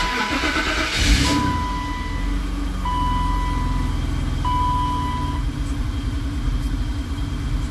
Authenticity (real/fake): real